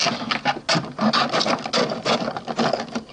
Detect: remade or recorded recorded